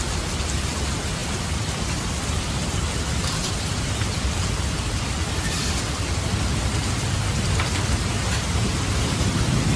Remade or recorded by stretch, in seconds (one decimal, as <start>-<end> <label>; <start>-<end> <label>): 0.0-3.4 recorded; 3.4-3.9 remade; 3.9-9.8 recorded